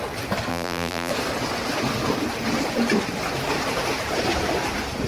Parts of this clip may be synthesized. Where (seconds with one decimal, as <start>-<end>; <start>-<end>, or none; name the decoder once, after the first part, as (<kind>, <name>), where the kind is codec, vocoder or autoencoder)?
0.5-1.1 (vocoder, BigVGAN v2)